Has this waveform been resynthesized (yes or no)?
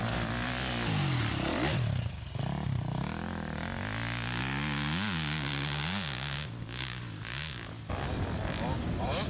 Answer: no